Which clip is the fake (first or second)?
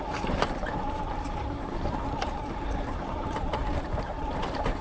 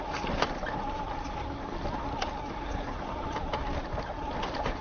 first